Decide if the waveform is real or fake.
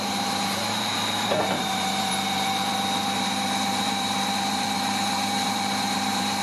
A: fake